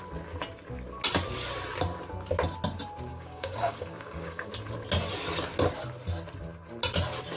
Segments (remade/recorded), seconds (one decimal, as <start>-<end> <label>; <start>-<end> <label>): 0.0-3.1 recorded; 3.1-4.5 remade; 4.5-7.4 recorded